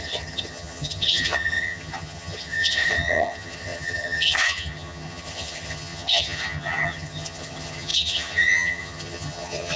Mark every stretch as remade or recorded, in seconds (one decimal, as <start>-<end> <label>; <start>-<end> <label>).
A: 0.0-9.8 remade